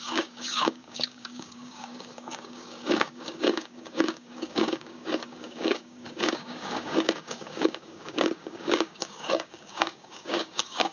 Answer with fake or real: fake